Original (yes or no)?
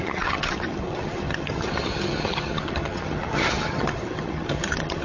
no